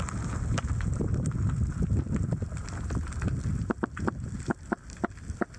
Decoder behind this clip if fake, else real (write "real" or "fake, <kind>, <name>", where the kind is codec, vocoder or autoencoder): real